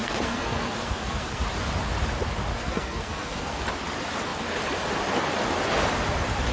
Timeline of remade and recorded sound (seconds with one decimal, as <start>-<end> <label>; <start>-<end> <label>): 0.0-1.4 remade; 1.4-2.5 recorded; 2.5-3.6 remade; 3.6-6.5 recorded